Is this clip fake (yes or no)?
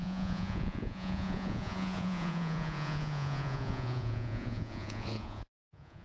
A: yes